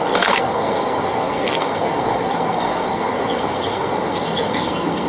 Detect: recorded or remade remade